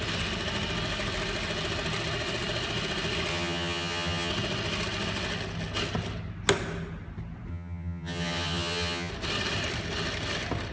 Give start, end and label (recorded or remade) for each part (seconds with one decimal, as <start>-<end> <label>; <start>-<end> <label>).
0.0-3.3 recorded; 3.3-4.3 remade; 4.3-7.5 recorded; 7.5-9.1 remade; 9.1-10.7 recorded